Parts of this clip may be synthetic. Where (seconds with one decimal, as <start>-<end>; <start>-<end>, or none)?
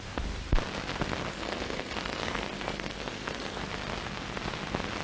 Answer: 1.3-3.6